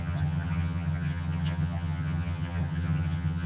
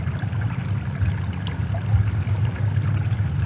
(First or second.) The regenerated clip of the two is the first